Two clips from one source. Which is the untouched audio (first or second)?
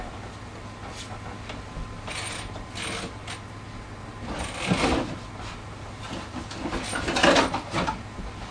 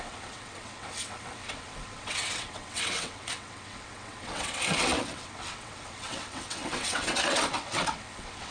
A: first